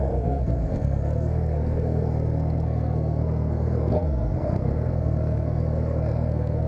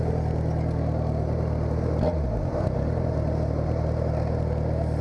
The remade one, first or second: first